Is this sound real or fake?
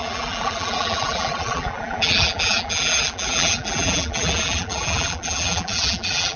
fake